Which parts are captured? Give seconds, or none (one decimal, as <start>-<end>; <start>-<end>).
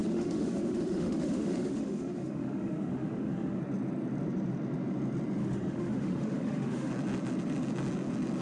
3.6-5.4; 6.9-8.4